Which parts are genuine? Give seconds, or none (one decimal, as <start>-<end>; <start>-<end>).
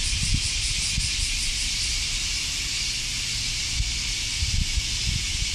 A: 0.0-5.5